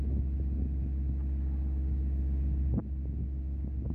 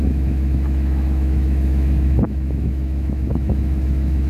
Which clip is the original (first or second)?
first